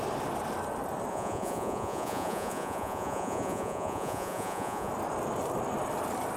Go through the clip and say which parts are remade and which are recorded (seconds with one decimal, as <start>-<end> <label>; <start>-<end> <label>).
0.0-1.1 recorded; 1.1-4.9 remade; 4.9-6.4 recorded